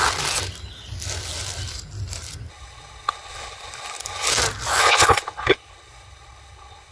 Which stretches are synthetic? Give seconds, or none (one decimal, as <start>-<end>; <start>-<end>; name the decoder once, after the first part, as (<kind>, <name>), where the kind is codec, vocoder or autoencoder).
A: 2.5-4.3 (codec, HILCodec); 4.8-6.9